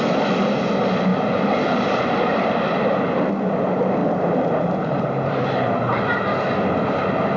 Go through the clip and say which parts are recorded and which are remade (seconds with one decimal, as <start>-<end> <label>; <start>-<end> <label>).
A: 0.0-1.1 recorded; 1.1-3.3 remade; 3.3-4.0 recorded; 4.0-6.0 remade; 6.0-7.4 recorded